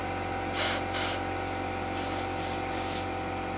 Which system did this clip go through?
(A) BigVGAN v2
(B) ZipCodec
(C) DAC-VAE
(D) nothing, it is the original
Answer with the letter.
D